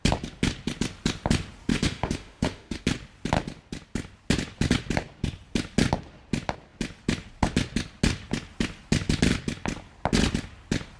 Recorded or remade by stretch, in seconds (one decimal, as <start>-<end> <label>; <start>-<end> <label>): 0.0-1.7 recorded; 1.7-2.8 remade; 2.8-11.0 recorded